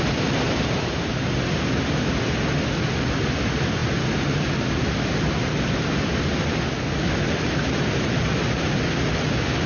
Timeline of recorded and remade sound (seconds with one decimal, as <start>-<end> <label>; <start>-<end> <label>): 0.0-9.7 recorded